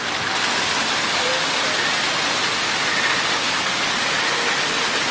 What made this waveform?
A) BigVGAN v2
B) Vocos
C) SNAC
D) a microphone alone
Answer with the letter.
D